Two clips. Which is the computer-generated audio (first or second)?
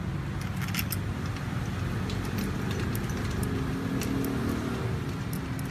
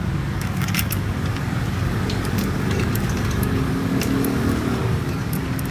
second